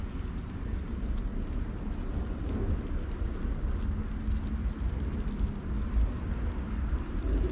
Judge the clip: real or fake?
real